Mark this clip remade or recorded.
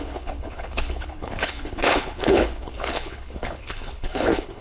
remade